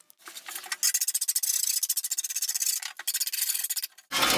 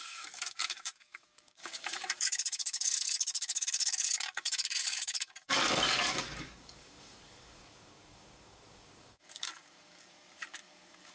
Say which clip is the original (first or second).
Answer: first